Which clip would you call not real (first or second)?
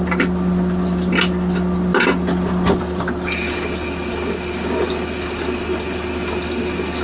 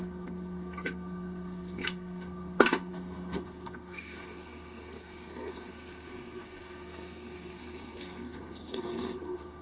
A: second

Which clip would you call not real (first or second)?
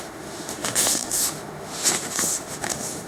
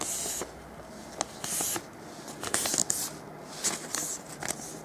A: first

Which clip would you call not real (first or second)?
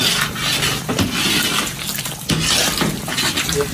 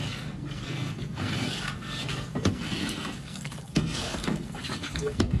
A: second